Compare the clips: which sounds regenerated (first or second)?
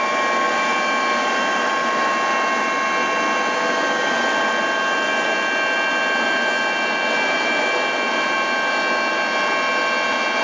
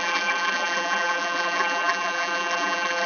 second